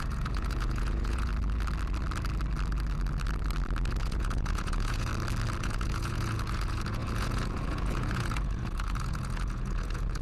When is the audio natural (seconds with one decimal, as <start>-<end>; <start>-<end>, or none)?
1.3-4.0; 5.1-5.6